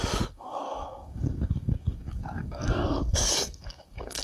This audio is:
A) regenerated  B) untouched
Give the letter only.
A